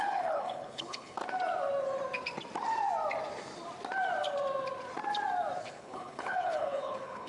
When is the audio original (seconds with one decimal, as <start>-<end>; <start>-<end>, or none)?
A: 1.2-5.6

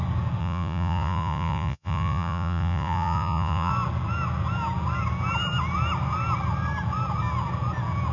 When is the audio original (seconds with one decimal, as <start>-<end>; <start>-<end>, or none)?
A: 0.0-0.4; 3.7-8.1

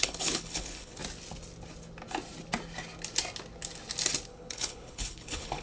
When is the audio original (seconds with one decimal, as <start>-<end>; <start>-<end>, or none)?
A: 1.0-4.3

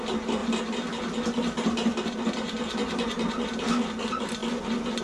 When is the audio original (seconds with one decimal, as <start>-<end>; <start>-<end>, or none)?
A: 0.0-5.0

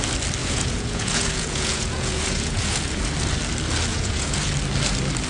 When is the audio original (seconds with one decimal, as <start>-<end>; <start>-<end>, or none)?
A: 0.0-0.4; 3.0-3.9; 4.5-5.3

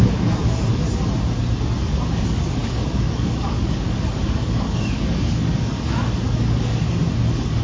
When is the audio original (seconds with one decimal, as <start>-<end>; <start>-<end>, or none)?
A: 0.4-1.8

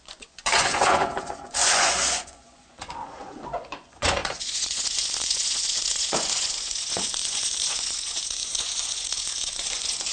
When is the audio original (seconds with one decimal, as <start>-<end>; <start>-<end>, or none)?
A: none

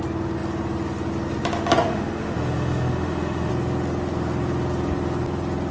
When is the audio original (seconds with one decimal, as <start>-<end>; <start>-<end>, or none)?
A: 0.0-1.9; 3.5-5.7